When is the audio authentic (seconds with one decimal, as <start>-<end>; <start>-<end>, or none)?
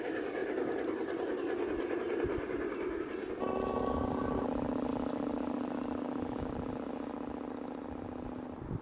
0.0-4.9; 6.5-8.8